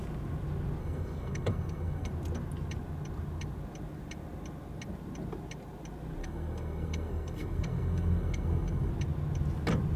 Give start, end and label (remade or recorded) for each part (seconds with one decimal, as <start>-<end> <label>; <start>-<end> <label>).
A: 0.0-0.8 recorded; 0.8-2.1 remade; 2.1-6.2 recorded; 6.2-8.9 remade; 8.9-10.0 recorded